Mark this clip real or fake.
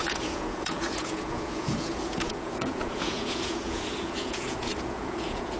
fake